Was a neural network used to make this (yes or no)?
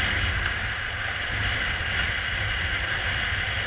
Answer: no